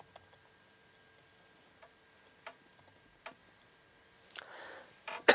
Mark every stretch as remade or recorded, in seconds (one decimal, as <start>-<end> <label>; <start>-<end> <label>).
0.0-5.3 recorded